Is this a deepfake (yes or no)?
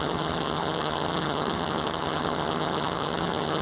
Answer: yes